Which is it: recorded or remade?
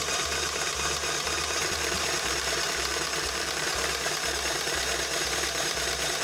remade